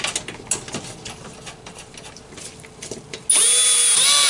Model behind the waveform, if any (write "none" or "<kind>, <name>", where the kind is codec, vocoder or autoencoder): none